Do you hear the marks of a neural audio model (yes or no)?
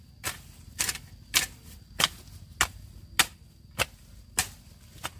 no